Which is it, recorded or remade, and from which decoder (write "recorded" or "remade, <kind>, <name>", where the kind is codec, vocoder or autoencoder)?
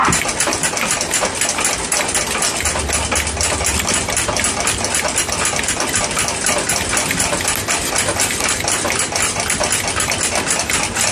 recorded